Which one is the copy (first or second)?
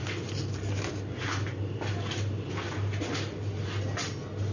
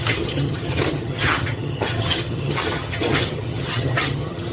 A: second